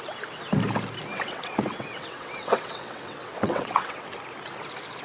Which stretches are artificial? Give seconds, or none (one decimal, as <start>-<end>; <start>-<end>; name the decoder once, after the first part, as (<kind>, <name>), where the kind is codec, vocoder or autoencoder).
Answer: 1.1-4.1 (vocoder, WaveNeXt)